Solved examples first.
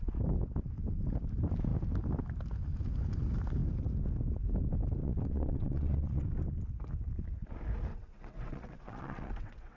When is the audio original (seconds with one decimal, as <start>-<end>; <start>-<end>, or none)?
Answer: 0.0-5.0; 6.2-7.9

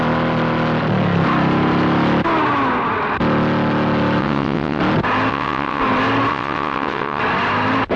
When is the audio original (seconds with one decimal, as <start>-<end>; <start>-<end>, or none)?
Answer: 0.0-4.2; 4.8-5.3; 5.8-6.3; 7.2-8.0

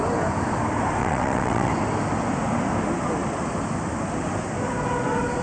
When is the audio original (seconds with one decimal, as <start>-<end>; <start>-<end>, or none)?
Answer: 0.0-1.0; 1.7-5.4

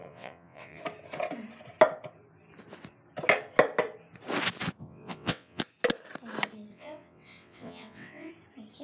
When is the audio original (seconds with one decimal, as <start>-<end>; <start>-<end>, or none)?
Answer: 0.8-4.8; 5.6-6.7; 8.3-8.8